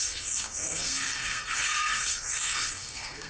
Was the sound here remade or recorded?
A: remade